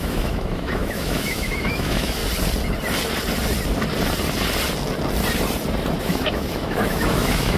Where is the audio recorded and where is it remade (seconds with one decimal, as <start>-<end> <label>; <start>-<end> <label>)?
0.0-2.2 remade; 2.2-6.0 recorded; 6.0-7.6 remade